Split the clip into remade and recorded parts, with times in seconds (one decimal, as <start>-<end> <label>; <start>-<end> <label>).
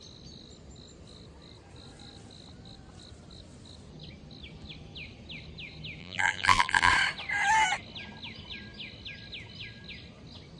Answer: 0.0-6.0 recorded; 6.0-6.9 remade; 6.9-10.6 recorded